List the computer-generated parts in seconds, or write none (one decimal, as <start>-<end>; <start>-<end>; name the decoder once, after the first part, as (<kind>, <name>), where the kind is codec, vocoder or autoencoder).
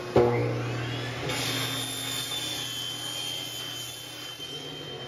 none